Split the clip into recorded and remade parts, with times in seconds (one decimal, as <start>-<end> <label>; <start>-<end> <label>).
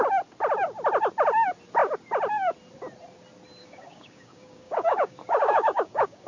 0.0-3.6 recorded; 3.6-6.3 remade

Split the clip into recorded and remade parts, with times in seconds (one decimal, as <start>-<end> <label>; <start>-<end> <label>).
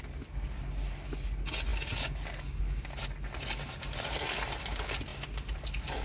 0.0-6.0 recorded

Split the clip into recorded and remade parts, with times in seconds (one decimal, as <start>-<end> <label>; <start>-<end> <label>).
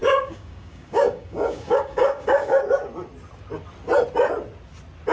0.0-2.6 remade; 2.6-5.1 recorded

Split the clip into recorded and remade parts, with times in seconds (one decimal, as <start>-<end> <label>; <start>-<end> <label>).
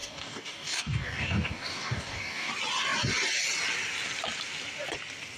0.0-2.5 remade; 2.5-5.4 recorded